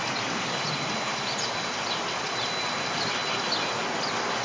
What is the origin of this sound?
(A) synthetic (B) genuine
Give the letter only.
B